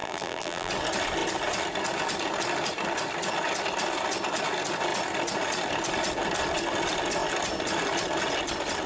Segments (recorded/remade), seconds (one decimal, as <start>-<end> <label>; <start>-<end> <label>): 0.0-0.7 remade; 0.7-8.9 recorded